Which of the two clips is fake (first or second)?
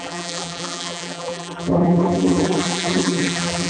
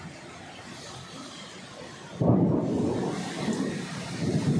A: first